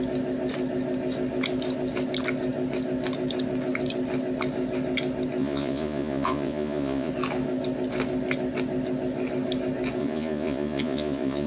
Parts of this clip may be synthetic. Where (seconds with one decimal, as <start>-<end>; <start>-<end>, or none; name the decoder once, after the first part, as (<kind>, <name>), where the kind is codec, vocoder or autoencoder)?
5.4-7.1 (vocoder, Vocos); 10.0-11.5